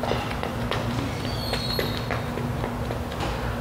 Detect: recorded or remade recorded